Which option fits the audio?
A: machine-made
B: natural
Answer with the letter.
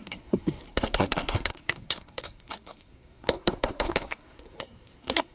A